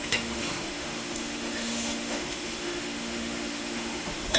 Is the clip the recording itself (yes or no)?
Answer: no